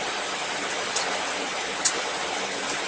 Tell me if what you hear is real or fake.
real